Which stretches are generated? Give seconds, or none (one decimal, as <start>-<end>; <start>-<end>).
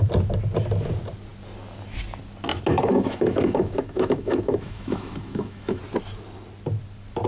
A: 2.7-5.8